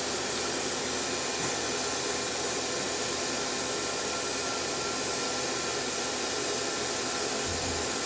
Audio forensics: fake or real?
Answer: real